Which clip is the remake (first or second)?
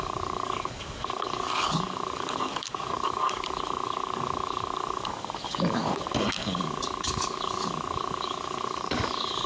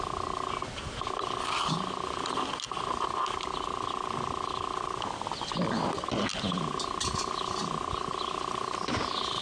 first